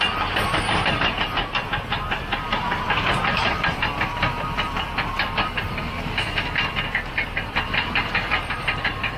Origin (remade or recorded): remade